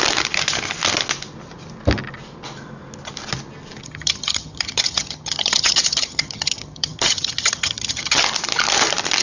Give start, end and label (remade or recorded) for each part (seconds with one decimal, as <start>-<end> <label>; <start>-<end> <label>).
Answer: 0.0-3.8 recorded; 3.8-8.2 remade; 8.2-9.2 recorded

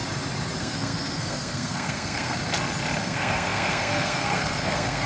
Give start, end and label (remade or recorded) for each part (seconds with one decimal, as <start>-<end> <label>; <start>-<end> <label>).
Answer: 0.0-0.6 recorded; 0.6-2.4 remade; 2.4-3.0 recorded; 3.0-5.1 remade

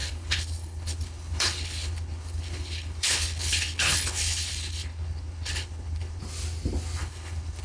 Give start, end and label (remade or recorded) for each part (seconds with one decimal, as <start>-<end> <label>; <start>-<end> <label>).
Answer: 0.0-6.2 remade; 6.2-7.0 recorded; 7.0-7.6 remade

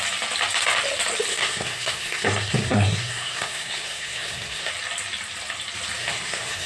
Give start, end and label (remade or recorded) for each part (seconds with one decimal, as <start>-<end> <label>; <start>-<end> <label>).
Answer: 0.0-1.3 recorded; 1.3-4.7 remade; 4.7-6.0 recorded; 6.0-6.7 remade